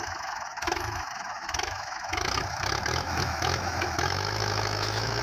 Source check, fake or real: fake